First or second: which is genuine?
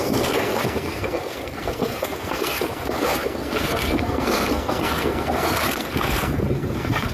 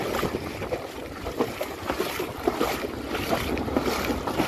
second